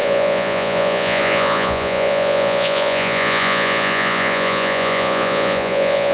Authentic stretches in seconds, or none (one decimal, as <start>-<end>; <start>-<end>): none